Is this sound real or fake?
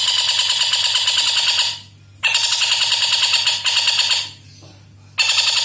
real